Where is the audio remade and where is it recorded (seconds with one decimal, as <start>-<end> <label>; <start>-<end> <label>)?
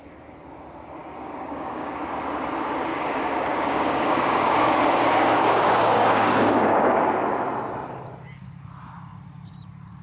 0.0-1.0 recorded; 1.0-2.0 remade; 2.0-2.9 recorded; 2.9-7.0 remade; 7.0-10.0 recorded